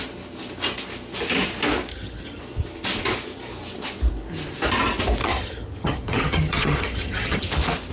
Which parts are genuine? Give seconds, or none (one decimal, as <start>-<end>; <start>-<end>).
0.0-1.9; 2.4-5.2; 7.5-7.9